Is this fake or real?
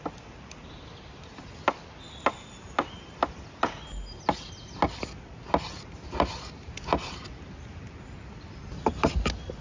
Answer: real